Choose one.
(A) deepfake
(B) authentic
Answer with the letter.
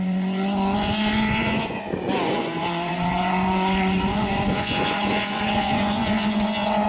A